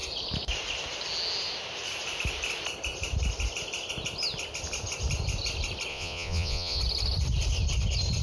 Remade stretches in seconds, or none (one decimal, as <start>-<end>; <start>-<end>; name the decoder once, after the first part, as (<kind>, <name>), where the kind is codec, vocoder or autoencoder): 5.9-6.8 (vocoder, Vocos)